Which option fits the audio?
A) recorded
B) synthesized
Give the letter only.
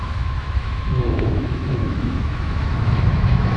B